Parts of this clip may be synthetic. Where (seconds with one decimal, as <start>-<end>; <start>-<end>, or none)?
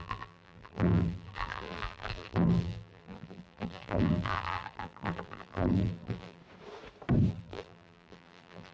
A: 0.0-6.4; 7.3-8.7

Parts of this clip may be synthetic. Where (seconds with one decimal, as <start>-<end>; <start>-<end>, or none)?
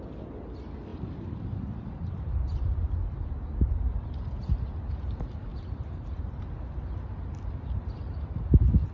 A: 0.9-2.9; 5.5-6.4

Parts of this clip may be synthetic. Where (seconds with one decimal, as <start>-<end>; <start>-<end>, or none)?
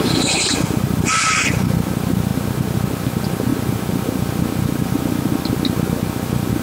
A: none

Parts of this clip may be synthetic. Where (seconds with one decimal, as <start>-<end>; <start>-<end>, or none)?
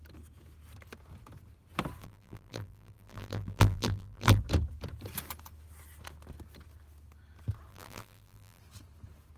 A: 2.0-4.4; 7.7-8.6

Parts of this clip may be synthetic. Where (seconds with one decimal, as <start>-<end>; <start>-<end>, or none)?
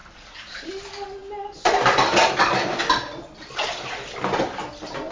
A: 0.0-0.7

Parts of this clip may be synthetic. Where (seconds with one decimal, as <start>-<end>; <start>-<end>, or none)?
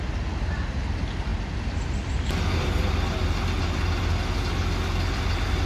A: none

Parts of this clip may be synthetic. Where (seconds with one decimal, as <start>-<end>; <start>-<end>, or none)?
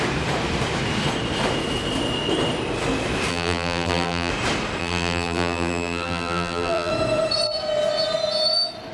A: 3.3-4.3; 4.8-6.9